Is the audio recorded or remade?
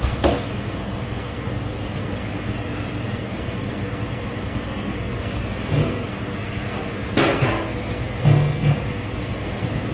remade